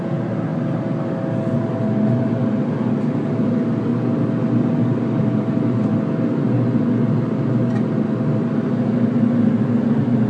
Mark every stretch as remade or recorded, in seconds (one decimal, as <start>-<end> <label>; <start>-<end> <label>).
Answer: 0.0-10.3 recorded